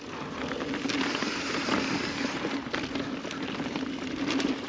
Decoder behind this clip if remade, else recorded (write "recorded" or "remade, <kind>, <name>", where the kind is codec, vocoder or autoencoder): recorded